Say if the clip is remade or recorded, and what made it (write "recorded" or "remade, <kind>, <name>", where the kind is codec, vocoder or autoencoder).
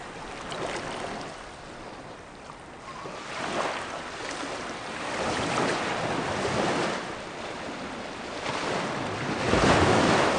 recorded